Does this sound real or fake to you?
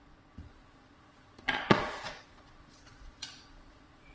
fake